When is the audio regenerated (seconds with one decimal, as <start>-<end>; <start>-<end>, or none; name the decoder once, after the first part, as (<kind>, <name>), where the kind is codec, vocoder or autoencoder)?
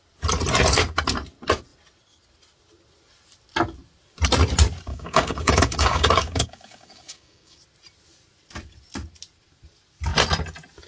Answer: 4.9-7.6 (codec, DAC)